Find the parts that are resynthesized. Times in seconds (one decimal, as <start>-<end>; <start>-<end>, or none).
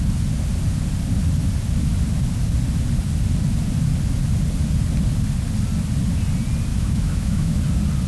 6.7-7.6